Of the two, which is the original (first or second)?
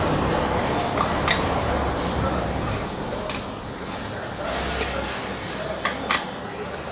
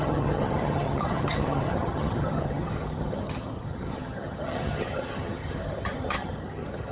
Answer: first